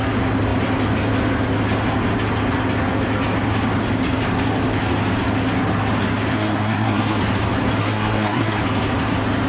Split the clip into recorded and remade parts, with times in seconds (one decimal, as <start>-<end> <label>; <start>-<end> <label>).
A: 0.0-6.3 recorded; 6.3-7.2 remade; 7.2-7.8 recorded; 7.8-8.6 remade; 8.6-9.5 recorded